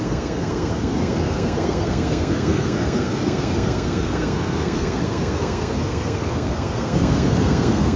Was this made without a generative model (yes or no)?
no